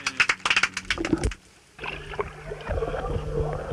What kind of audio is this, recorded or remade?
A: recorded